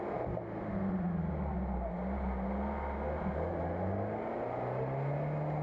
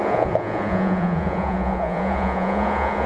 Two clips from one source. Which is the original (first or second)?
first